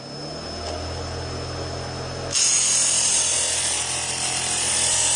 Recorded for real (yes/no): yes